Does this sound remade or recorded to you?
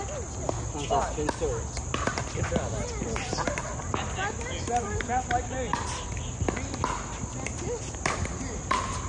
recorded